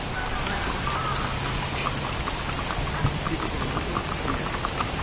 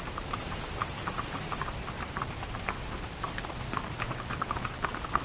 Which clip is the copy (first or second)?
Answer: second